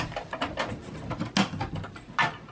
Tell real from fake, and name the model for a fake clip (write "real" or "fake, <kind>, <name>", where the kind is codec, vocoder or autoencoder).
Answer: real